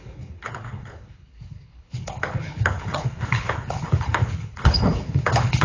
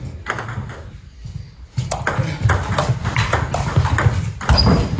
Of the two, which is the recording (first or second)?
second